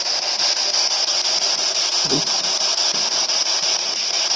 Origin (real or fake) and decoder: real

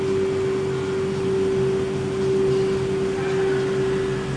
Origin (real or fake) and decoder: real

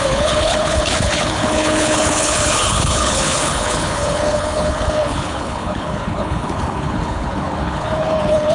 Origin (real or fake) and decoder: fake, codec, HILCodec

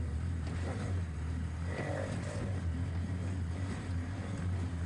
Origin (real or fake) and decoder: real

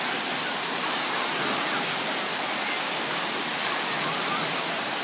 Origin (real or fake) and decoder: real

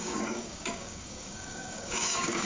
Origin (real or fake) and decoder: fake, codec, DAC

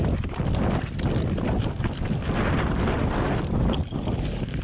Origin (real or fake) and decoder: real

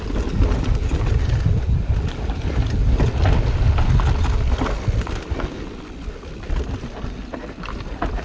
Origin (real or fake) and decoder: real